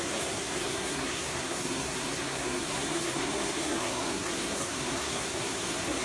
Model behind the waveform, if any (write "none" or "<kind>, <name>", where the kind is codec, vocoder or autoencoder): codec, SNAC